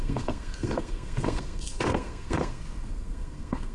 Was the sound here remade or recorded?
remade